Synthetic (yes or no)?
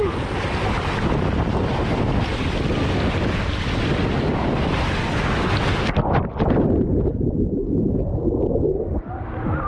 no